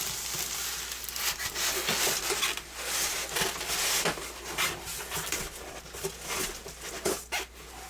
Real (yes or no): yes